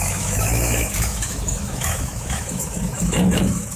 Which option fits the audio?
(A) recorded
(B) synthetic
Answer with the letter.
B